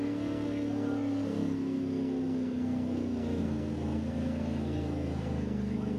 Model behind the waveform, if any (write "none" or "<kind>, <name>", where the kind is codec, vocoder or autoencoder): codec, SNAC